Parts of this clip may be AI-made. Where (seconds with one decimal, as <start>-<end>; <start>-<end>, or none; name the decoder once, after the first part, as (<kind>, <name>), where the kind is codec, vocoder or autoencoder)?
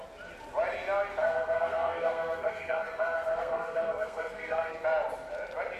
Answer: 1.2-4.7 (codec, SNAC)